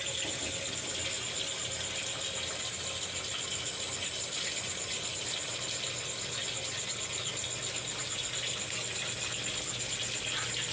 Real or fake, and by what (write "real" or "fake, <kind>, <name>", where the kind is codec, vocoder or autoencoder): real